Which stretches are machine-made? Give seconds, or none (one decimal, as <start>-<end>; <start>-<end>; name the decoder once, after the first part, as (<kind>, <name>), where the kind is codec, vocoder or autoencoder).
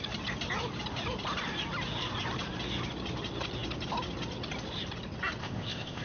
5.4-6.0 (codec, ZipCodec)